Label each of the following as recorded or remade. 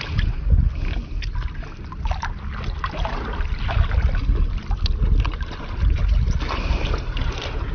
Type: recorded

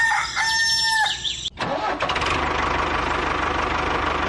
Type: recorded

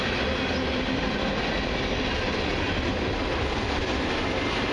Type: recorded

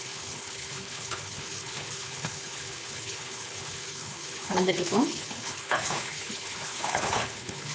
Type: remade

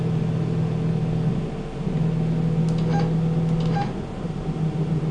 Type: recorded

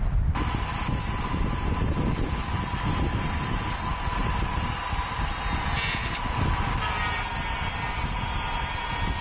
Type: recorded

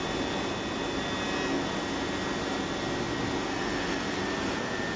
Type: recorded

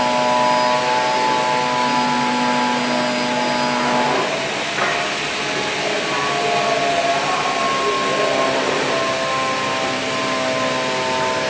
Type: recorded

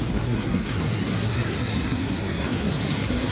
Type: remade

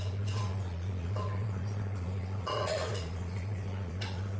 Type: remade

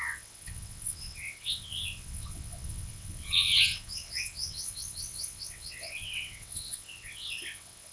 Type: remade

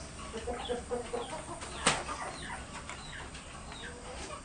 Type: recorded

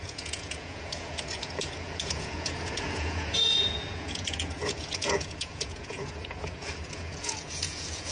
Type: remade